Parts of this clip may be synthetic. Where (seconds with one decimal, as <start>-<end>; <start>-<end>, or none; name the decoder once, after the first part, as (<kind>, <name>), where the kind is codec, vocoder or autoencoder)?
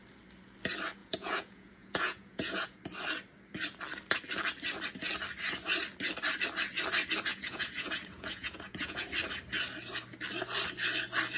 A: 1.0-2.8 (vocoder, Vocos); 7.3-9.1